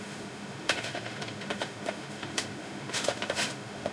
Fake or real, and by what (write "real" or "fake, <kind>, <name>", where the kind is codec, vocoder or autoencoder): fake, autoencoder, DAC-VAE